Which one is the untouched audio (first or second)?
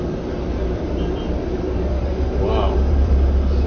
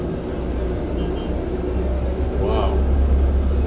second